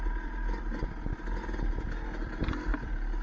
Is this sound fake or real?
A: real